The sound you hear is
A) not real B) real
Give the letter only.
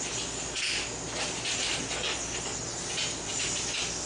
B